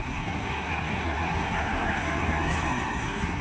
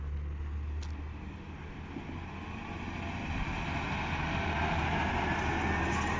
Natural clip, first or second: second